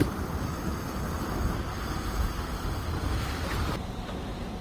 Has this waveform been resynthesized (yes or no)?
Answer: no